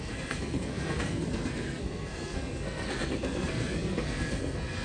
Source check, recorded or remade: remade